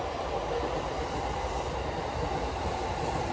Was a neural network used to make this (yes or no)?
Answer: no